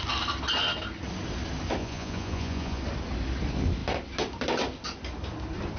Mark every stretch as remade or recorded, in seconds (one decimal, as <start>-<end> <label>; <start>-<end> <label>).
0.0-1.8 recorded; 1.8-2.8 remade; 2.8-5.8 recorded